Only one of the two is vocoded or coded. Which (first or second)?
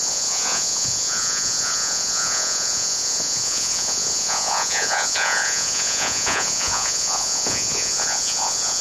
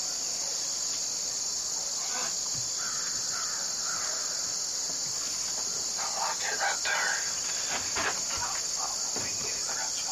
first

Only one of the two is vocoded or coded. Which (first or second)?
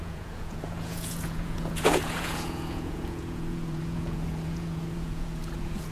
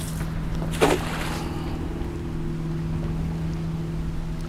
first